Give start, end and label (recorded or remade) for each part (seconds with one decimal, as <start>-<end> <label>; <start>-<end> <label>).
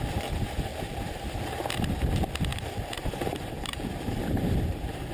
0.0-0.7 recorded; 0.7-1.6 remade; 1.6-2.5 recorded; 2.5-5.1 remade